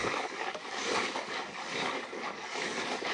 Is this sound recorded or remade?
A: remade